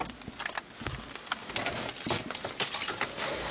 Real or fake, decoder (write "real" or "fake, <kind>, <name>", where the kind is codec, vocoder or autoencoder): real